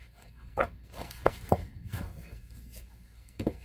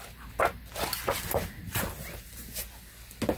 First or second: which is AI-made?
first